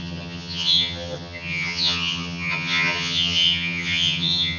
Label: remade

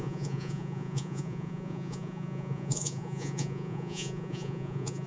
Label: remade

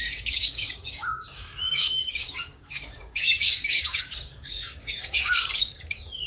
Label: remade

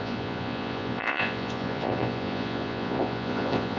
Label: remade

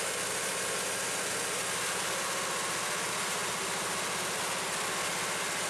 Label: recorded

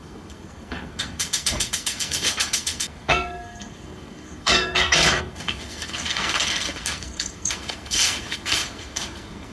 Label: remade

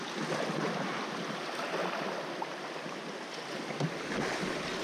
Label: recorded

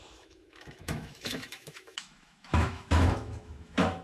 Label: remade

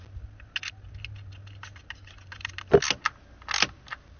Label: recorded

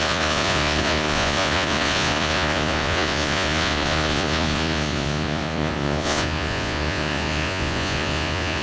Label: remade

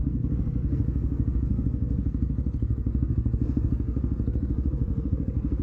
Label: remade